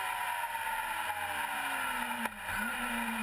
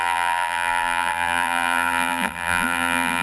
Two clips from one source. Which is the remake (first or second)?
second